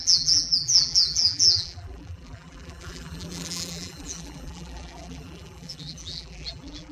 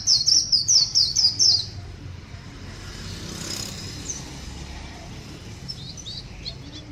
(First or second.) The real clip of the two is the second